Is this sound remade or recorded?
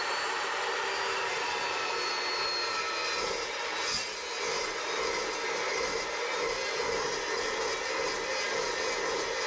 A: recorded